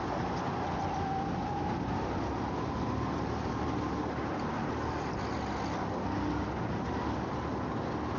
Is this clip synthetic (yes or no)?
no